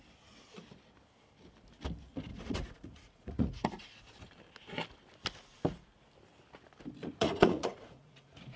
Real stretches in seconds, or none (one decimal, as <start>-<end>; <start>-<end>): 0.0-2.3; 3.7-7.0